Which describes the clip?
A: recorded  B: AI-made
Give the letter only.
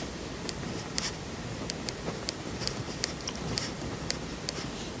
A